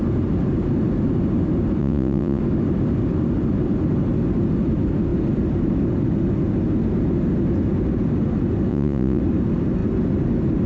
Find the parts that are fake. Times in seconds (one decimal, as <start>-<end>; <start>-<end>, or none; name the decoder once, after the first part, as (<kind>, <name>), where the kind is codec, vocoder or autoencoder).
1.8-2.4 (vocoder, Vocos); 8.7-9.2